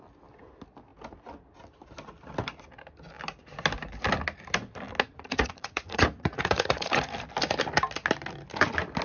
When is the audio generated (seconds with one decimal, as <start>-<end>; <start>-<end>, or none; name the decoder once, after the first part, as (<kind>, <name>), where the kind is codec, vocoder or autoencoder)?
5.1-7.1 (vocoder, Vocos)